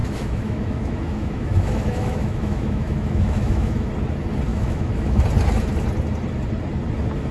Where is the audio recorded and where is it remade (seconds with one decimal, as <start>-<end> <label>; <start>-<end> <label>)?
0.0-3.9 remade; 3.9-4.5 recorded; 4.5-5.2 remade; 5.2-7.3 recorded